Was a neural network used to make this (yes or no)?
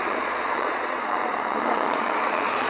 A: yes